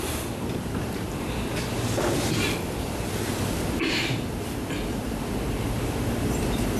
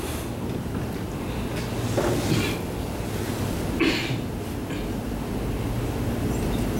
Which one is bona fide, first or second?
second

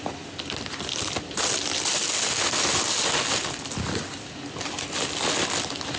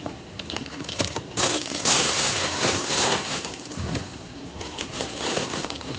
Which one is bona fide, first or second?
first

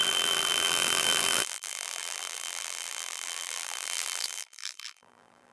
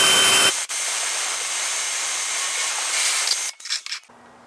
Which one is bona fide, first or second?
second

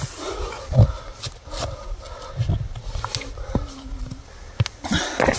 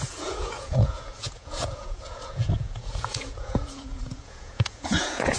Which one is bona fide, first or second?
first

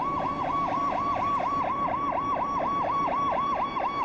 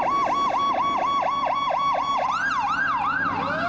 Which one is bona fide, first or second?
second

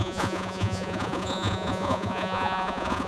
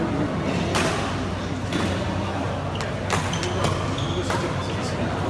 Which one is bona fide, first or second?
second